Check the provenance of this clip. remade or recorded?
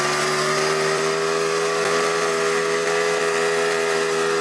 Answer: recorded